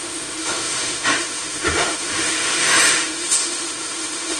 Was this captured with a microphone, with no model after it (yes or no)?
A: no